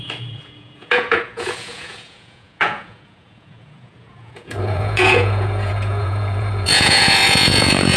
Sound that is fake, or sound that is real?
fake